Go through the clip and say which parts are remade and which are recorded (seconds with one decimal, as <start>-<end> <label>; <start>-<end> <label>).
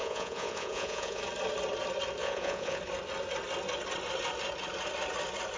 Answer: 0.0-1.2 remade; 1.2-2.2 recorded; 2.2-2.8 remade; 2.8-5.6 recorded